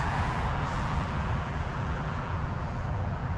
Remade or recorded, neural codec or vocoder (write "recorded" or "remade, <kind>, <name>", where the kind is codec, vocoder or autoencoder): remade, vocoder, BigVGAN v2